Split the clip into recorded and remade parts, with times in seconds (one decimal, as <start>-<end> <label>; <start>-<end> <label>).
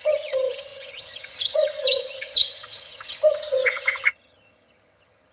0.0-5.3 remade